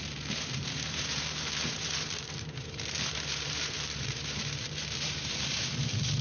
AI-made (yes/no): yes